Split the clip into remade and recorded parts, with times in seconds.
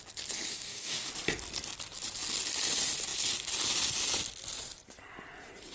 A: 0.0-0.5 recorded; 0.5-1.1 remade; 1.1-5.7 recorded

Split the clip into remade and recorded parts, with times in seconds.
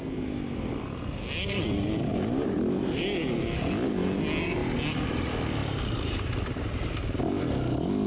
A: 0.0-2.1 recorded; 2.1-3.0 remade; 3.0-5.6 recorded; 5.6-7.2 remade; 7.2-8.1 recorded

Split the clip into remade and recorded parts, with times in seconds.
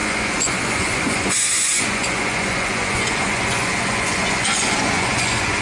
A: 0.0-5.6 remade